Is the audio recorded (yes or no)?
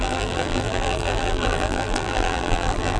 no